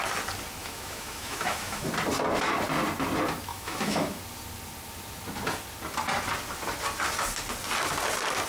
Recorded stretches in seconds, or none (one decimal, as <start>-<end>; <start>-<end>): 0.0-0.6; 1.9-3.5; 4.2-8.5